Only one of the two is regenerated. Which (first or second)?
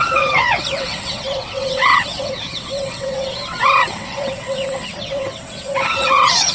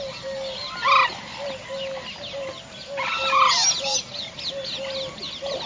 first